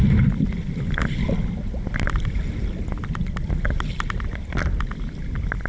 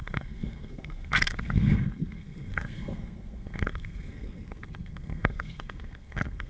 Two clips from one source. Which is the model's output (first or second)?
second